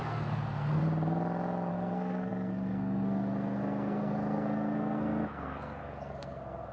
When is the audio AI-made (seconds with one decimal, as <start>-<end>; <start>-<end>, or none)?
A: 0.0-0.8; 1.7-6.7